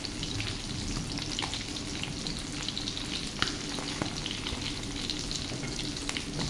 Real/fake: real